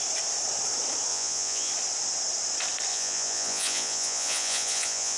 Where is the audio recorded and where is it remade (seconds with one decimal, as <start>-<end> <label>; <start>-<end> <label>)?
0.0-1.1 recorded; 1.1-1.7 remade; 1.7-2.9 recorded; 2.9-5.2 remade